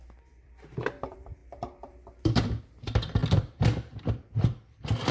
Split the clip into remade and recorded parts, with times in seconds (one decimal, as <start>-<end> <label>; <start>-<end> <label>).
0.0-3.2 remade; 3.2-4.0 recorded; 4.0-5.1 remade